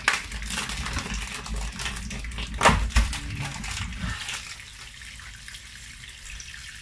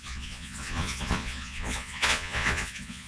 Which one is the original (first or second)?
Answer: first